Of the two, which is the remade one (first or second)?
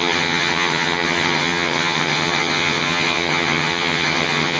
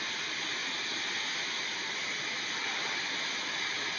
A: first